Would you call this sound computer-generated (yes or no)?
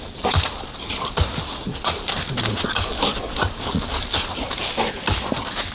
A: no